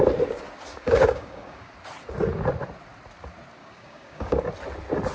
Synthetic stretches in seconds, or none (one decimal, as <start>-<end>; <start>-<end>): 0.7-1.7; 3.6-4.4

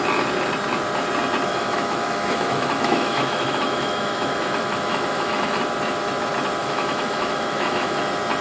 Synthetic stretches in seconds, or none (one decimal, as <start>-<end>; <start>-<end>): 1.5-5.6; 6.6-8.0

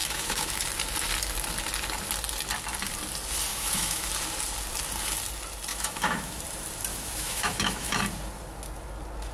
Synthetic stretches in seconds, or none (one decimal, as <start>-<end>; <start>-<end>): 0.0-0.5; 3.5-4.1; 5.7-6.4; 6.9-8.0

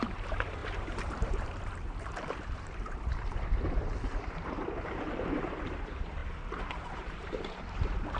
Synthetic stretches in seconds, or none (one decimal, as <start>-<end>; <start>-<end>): 0.0-8.2